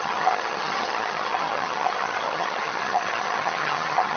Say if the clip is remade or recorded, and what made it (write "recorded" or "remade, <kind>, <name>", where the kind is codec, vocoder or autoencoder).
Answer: remade, vocoder, HiFi-GAN